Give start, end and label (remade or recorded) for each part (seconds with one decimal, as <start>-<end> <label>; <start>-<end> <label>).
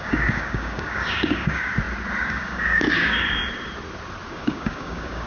0.0-1.7 remade; 1.7-2.2 recorded; 2.2-3.4 remade; 3.4-4.3 recorded; 4.3-5.3 remade